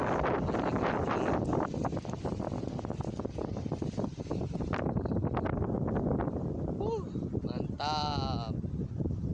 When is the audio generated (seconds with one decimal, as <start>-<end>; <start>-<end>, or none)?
none

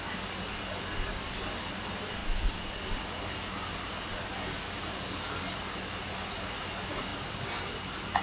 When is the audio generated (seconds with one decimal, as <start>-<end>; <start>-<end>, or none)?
7.1-8.2

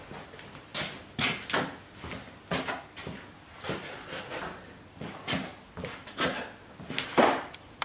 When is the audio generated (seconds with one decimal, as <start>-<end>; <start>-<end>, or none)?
0.0-0.7; 5.0-5.5; 7.1-7.8